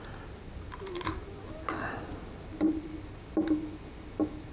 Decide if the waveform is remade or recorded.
recorded